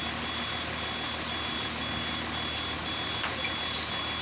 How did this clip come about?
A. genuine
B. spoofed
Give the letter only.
A